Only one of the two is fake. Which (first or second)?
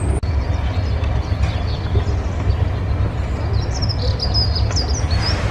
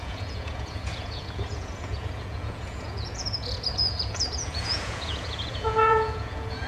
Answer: second